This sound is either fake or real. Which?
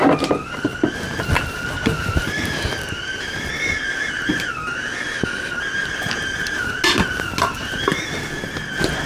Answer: real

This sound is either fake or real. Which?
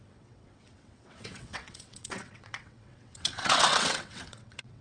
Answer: fake